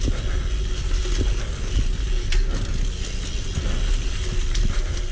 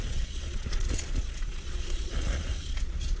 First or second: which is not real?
second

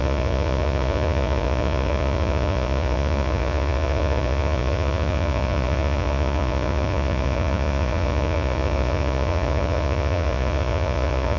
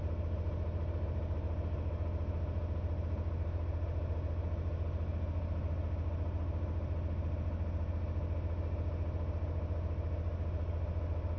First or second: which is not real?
first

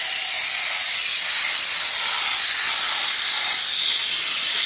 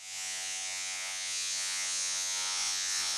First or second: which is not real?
second